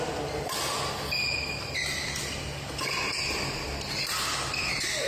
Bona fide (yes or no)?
yes